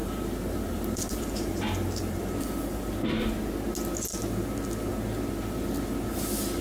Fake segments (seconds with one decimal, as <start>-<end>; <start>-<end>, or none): 0.0-2.4